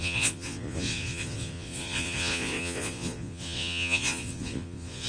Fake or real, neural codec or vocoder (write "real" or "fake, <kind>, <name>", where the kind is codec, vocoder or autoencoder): fake, vocoder, Vocos